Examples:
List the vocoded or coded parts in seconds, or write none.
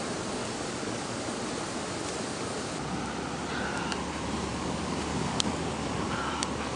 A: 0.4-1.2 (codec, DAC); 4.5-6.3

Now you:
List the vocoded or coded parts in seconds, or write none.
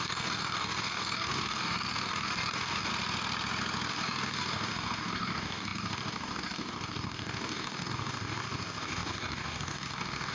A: 0.0-2.9 (codec, DAC); 3.9-10.3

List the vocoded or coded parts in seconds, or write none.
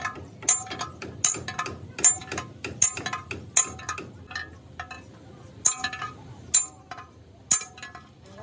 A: none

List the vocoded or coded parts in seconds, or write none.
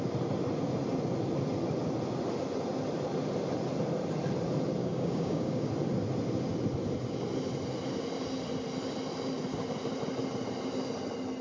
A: 4.8-5.7 (codec, DAC)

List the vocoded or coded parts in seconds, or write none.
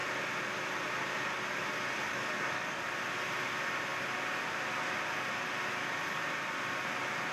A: 2.1-2.8 (codec, DAC)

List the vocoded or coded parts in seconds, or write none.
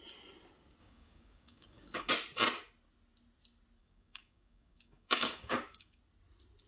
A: 0.8-2.1 (codec, DAC); 3.8-6.0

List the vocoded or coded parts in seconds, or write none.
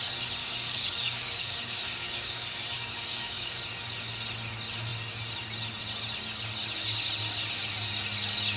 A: 0.4-3.6 (codec, DAC)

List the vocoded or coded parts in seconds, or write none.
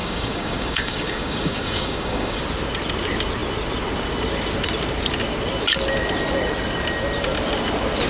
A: 0.0-2.4 (codec, DAC)